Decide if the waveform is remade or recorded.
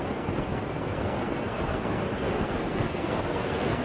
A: remade